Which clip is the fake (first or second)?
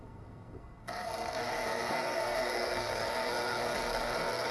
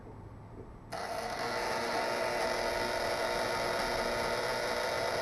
first